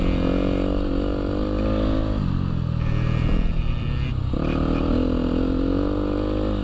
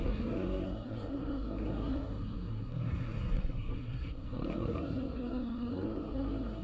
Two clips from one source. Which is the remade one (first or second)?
second